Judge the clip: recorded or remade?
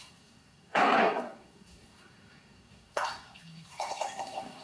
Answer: remade